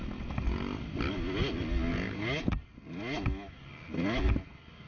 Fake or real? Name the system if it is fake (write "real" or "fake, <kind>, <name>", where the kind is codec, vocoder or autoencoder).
real